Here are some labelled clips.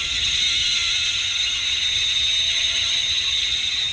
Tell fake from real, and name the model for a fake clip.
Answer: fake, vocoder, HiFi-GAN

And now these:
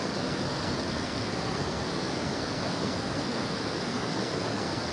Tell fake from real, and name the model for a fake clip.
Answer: fake, codec, SNAC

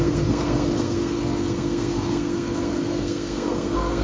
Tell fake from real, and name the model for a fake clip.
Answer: fake, codec, SNAC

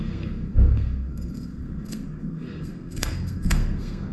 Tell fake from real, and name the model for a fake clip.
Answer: fake, codec, SNAC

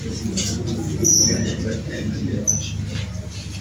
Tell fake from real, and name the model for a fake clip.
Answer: real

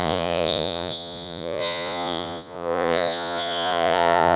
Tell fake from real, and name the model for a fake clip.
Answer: fake, vocoder, Vocos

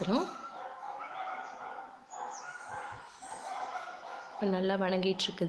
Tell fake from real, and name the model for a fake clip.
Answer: fake, autoencoder, DAC-VAE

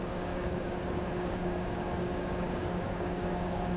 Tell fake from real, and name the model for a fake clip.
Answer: fake, codec, DAC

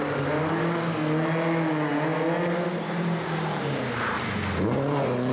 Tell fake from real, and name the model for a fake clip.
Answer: real